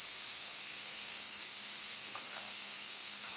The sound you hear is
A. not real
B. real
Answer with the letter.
A